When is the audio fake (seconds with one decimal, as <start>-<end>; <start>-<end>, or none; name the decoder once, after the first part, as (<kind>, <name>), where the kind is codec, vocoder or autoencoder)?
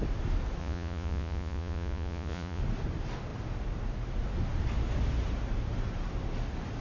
0.6-2.6 (vocoder, Vocos)